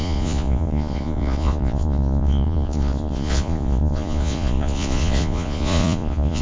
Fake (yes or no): yes